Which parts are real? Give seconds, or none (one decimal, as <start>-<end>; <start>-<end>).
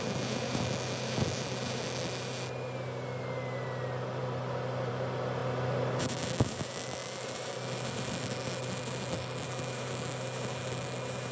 0.0-11.3